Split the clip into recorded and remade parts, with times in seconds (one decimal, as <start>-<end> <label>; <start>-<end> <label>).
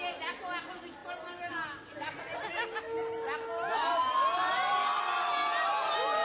0.0-6.2 recorded